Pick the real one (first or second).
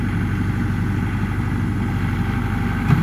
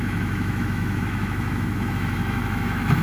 first